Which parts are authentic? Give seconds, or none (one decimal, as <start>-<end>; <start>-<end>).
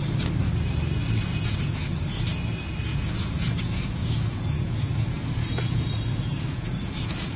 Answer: 0.0-1.3; 2.2-2.9; 6.9-7.4